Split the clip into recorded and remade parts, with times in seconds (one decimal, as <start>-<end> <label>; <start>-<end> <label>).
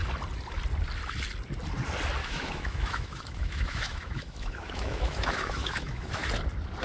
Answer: 0.0-2.2 recorded; 2.2-6.3 remade; 6.3-6.8 recorded